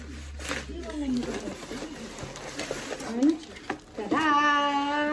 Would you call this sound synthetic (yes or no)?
no